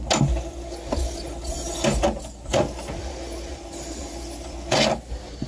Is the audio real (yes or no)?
yes